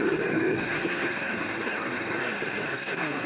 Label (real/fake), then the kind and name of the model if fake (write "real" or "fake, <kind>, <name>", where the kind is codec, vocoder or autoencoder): fake, codec, SNAC